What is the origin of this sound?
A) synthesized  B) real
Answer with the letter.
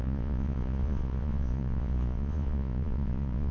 A